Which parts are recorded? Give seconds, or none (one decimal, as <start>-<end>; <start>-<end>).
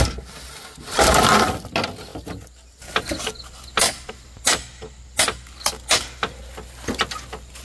0.0-7.6